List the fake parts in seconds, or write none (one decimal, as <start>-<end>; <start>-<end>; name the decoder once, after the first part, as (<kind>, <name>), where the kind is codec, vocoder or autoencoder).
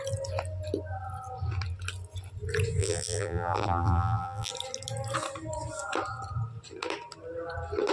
2.8-4.5 (vocoder, BigVGAN v2)